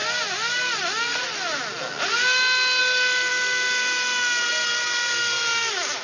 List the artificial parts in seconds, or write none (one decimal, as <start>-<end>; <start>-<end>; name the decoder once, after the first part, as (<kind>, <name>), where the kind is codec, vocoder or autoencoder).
none